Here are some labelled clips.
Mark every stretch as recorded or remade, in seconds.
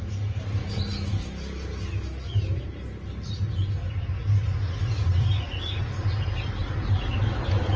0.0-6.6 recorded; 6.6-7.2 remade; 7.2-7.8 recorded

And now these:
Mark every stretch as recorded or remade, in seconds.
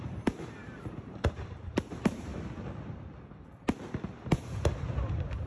0.0-2.3 remade; 2.3-4.7 recorded; 4.7-5.5 remade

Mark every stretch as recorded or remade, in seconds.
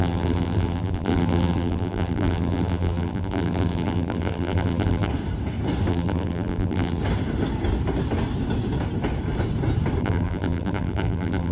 0.0-5.1 remade; 5.1-5.9 recorded; 5.9-7.0 remade; 7.0-10.0 recorded; 10.0-11.5 remade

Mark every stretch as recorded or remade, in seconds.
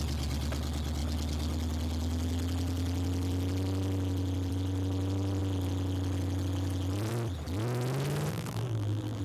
0.0-8.3 recorded; 8.3-9.2 remade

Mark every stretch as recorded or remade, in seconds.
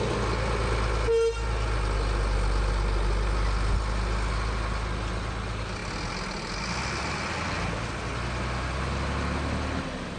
0.0-10.2 recorded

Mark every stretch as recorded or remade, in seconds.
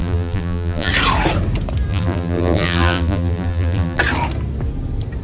0.0-0.9 remade; 0.9-1.9 recorded; 1.9-4.0 remade; 4.0-5.2 recorded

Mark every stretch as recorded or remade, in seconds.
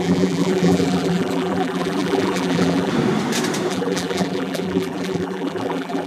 0.0-2.9 remade; 2.9-3.7 recorded; 3.7-6.1 remade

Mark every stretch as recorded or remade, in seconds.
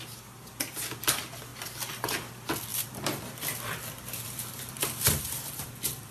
0.0-2.7 recorded; 2.7-6.1 remade